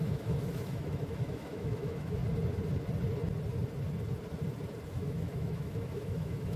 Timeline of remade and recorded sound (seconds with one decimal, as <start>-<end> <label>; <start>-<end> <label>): 0.0-2.2 remade; 2.2-4.9 recorded; 4.9-6.6 remade